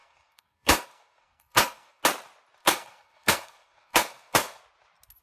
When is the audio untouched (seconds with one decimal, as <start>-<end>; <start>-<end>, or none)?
2.0-2.6; 4.6-5.2